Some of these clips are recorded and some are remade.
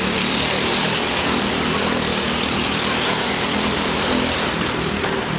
recorded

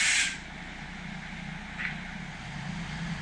recorded